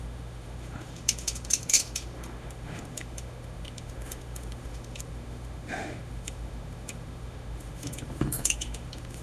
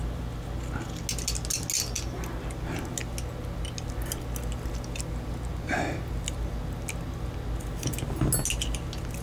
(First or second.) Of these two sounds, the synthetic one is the first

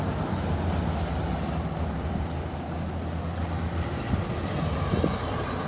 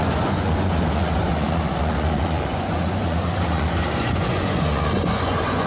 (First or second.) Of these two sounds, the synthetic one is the second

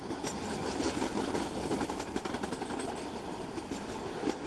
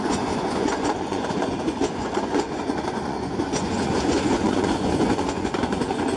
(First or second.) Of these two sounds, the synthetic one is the second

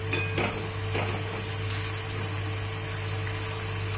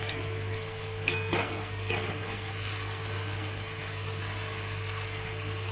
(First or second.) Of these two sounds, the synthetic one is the second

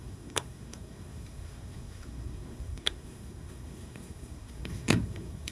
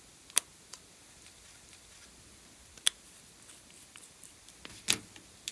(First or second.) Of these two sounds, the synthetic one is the first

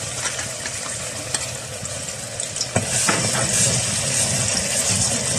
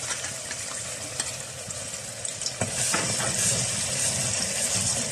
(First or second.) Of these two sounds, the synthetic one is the second